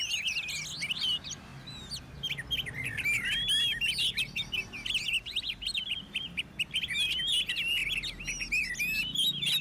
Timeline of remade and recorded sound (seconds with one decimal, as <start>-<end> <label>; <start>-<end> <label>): 0.0-9.6 recorded